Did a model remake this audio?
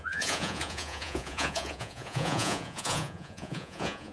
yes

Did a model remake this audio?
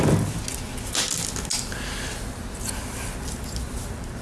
no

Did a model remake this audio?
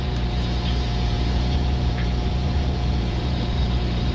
yes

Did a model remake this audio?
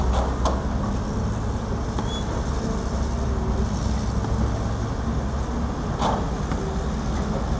no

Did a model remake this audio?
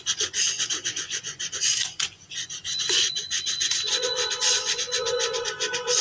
yes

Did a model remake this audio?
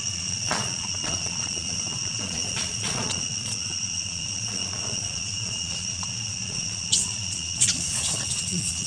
yes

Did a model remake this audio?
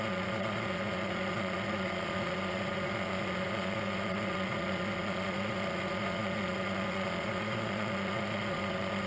yes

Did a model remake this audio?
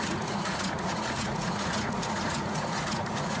yes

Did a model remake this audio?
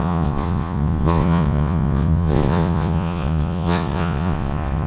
yes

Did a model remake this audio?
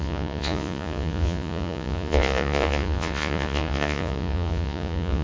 yes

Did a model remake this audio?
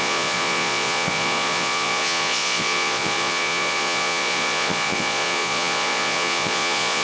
yes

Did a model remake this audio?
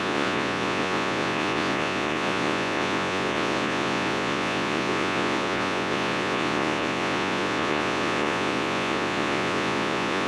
yes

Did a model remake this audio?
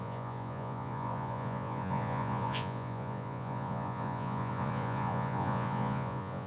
yes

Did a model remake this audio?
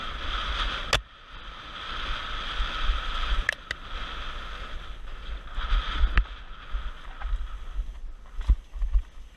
no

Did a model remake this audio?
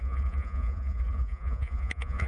yes